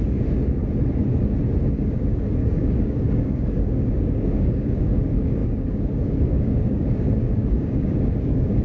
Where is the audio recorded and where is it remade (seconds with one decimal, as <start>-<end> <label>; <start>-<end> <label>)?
0.0-0.6 remade; 0.6-1.6 recorded; 1.6-8.6 remade